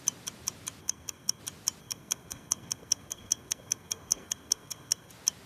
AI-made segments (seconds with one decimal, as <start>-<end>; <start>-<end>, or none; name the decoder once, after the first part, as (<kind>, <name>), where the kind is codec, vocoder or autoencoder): 0.8-1.4 (codec, SNAC); 1.8-5.1